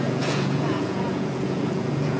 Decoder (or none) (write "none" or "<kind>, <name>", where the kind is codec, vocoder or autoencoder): vocoder, Vocos